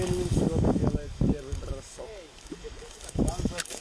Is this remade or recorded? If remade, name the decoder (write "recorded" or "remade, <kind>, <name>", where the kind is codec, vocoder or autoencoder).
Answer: remade, codec, DAC